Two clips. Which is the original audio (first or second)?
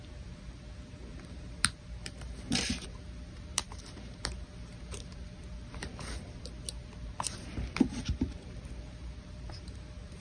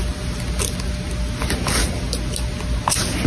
second